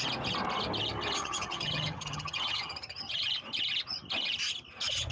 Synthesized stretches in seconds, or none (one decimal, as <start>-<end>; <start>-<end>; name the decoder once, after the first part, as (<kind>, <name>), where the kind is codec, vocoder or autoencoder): 1.2-3.1 (vocoder, HiFi-GAN)